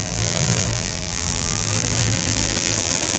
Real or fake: fake